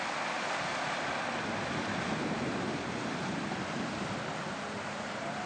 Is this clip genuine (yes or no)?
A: yes